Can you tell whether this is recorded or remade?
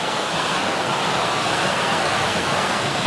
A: remade